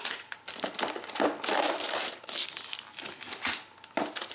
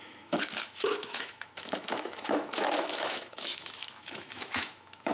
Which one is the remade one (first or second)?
second